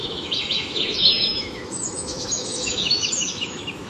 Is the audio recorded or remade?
remade